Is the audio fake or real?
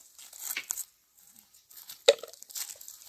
real